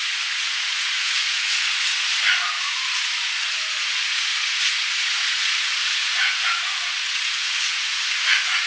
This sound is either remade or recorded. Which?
remade